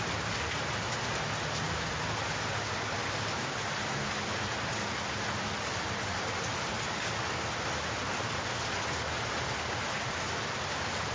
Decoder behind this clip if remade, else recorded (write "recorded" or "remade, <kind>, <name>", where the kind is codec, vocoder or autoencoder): recorded